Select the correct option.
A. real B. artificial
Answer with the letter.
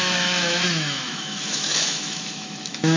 B